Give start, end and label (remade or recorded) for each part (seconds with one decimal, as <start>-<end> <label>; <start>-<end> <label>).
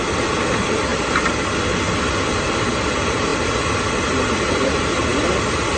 0.0-5.8 recorded